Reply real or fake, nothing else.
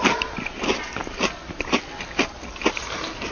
real